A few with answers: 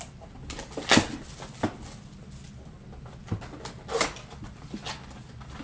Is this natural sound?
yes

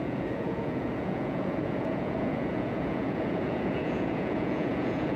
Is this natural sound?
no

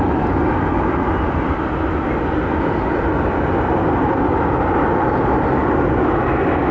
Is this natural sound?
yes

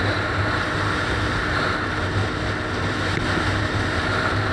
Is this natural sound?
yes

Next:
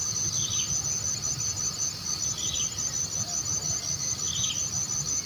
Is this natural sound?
yes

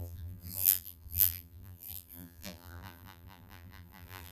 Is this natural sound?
no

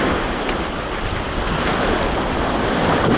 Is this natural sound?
yes